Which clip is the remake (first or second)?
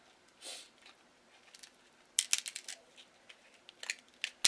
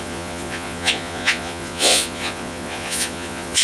second